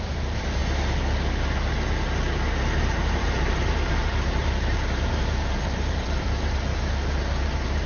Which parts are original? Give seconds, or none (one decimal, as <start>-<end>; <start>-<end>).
0.6-2.8; 6.7-7.2